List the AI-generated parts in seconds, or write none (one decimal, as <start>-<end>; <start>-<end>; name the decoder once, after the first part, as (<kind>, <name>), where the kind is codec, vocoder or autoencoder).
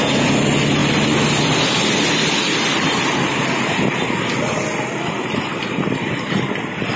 none